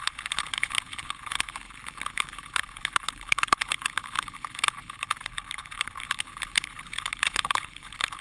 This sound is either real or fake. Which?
fake